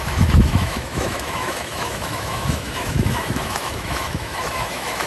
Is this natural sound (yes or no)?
no